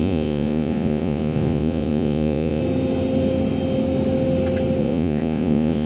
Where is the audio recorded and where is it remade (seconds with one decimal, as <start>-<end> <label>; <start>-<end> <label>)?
0.0-2.6 remade; 2.6-4.8 recorded; 4.8-5.9 remade